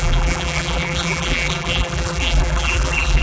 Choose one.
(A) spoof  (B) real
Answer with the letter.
A